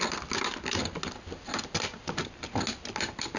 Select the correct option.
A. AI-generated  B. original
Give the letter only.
B